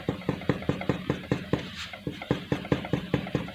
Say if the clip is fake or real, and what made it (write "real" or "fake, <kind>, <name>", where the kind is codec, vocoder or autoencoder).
fake, vocoder, BigVGAN v2